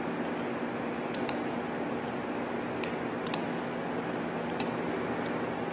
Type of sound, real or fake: real